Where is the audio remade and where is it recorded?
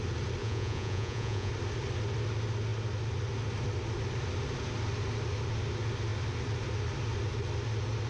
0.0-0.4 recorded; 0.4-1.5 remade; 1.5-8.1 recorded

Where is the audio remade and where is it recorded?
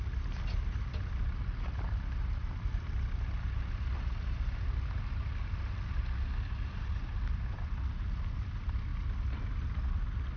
0.0-10.4 recorded